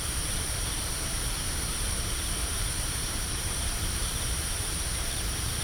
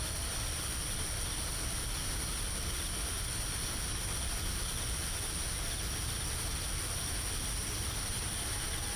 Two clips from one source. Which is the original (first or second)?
second